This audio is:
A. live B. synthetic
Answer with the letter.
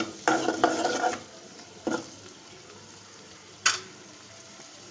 A